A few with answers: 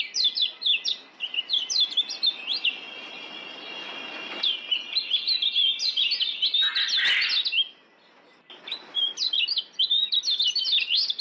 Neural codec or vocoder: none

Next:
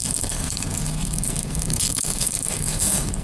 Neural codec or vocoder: codec, SNAC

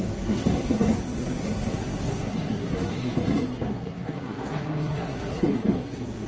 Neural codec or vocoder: codec, SNAC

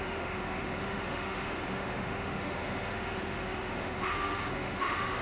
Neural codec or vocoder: autoencoder, DAC-VAE